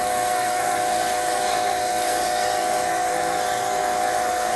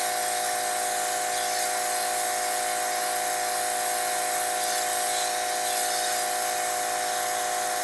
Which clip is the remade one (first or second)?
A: first